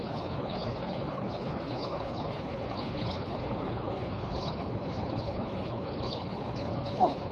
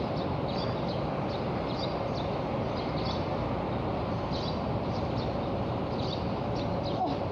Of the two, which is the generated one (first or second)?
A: first